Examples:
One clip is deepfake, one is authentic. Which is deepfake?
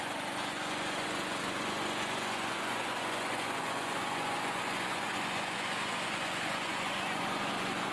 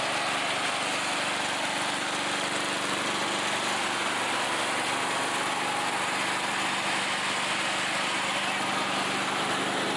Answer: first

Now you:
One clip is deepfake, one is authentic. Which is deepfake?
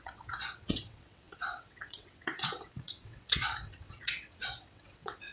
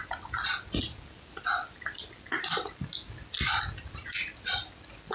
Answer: first